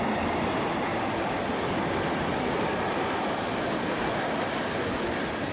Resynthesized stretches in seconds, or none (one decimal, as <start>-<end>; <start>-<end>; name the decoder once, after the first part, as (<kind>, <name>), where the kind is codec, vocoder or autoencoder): 0.9-4.2 (vocoder, BigVGAN v2)